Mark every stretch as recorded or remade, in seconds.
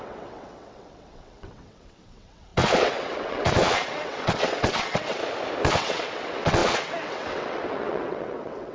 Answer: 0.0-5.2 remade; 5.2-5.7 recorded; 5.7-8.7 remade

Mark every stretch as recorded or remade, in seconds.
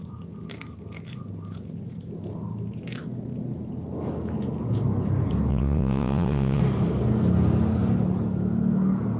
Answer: 0.0-5.5 recorded; 5.5-6.6 remade; 6.6-9.2 recorded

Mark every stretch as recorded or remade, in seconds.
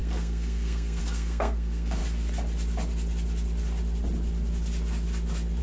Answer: 0.0-2.0 remade; 2.0-5.6 recorded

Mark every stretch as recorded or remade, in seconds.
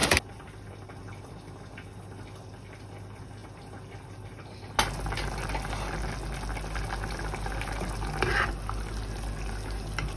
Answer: 0.0-10.2 recorded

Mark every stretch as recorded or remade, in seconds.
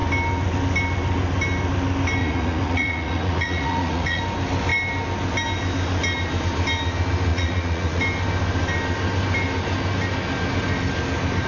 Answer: 0.0-2.2 recorded; 2.2-4.2 remade; 4.2-7.3 recorded; 7.3-8.0 remade; 8.0-11.5 recorded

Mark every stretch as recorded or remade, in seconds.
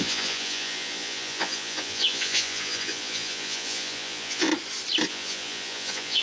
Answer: 0.0-4.5 remade; 4.5-5.1 recorded; 5.1-6.2 remade